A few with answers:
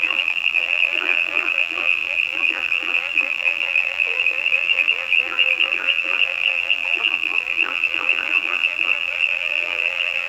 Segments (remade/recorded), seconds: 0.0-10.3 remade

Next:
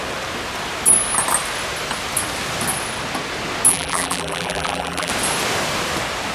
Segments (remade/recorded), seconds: 0.0-3.7 recorded; 3.7-5.1 remade; 5.1-6.3 recorded

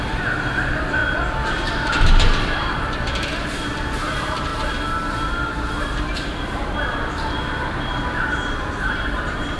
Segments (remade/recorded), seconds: 0.0-1.0 remade; 1.0-1.5 recorded; 1.5-4.5 remade; 4.5-5.1 recorded; 5.1-9.6 remade

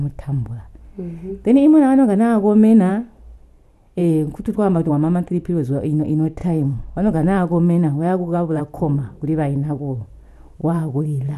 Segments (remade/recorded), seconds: 0.0-4.0 recorded; 4.0-4.9 remade; 4.9-6.4 recorded; 6.4-8.6 remade; 8.6-10.6 recorded; 10.6-11.4 remade